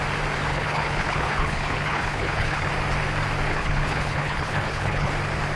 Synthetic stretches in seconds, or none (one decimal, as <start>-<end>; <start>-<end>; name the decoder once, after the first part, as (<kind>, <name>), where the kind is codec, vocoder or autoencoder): 0.5-2.7 (codec, HILCodec); 3.5-5.1

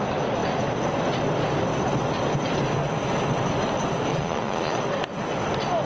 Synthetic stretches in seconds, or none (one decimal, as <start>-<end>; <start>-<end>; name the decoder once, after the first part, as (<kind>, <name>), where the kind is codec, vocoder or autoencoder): 4.1-4.8 (vocoder, Vocos)

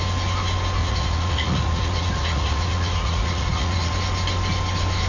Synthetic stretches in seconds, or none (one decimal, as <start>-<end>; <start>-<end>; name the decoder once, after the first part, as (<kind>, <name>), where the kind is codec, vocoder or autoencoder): 0.8-3.9 (vocoder, Vocos)

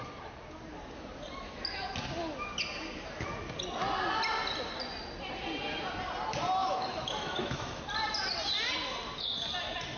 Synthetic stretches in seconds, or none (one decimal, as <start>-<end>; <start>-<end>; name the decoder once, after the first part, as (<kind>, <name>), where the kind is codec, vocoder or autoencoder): 6.6-7.8 (autoencoder, DAC-VAE)